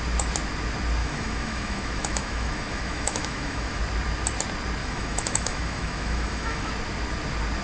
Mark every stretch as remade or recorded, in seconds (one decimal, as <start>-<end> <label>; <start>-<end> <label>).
0.0-1.0 recorded; 1.0-3.8 remade; 3.8-4.8 recorded; 4.8-6.7 remade; 6.7-7.6 recorded